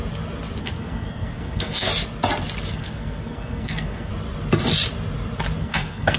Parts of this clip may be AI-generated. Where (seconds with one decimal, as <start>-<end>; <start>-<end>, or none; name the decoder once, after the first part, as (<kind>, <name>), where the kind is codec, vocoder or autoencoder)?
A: 0.6-1.9 (codec, SNAC); 2.7-4.1; 5.6-6.2